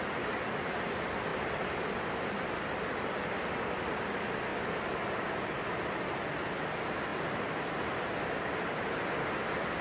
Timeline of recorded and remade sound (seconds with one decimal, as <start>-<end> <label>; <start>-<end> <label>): 0.0-9.8 recorded

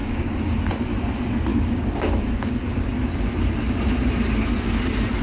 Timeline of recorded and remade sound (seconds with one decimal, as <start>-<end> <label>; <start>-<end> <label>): 0.0-0.7 remade; 0.7-1.5 recorded; 1.5-2.9 remade; 2.9-5.2 recorded

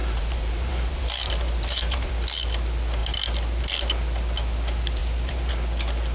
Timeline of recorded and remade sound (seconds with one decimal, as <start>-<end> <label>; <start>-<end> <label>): 0.0-2.1 remade; 2.1-5.0 recorded; 5.0-5.5 remade; 5.5-6.1 recorded

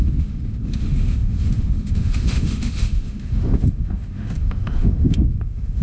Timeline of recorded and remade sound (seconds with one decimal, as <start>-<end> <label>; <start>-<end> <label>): 0.0-5.8 remade

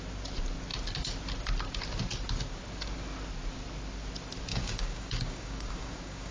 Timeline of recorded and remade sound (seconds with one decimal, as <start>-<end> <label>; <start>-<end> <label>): 0.0-4.5 recorded; 4.5-6.3 remade

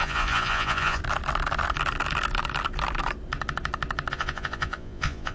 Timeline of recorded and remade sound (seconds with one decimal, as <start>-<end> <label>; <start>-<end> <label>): 0.0-1.0 remade; 1.0-4.1 recorded; 4.1-5.3 remade

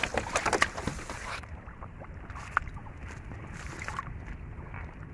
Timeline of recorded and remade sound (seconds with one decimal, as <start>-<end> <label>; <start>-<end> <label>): 0.0-0.9 recorded; 0.9-2.2 remade; 2.2-5.1 recorded